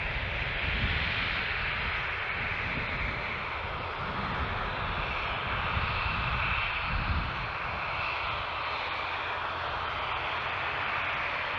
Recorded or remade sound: recorded